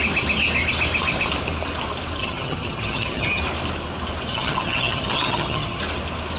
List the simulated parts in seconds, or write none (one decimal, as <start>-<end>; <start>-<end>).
2.2-3.4; 4.3-5.8